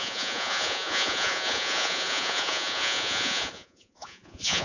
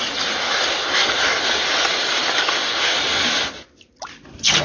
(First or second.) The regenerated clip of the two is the first